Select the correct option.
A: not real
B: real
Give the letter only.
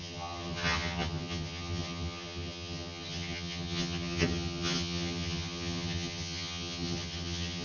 A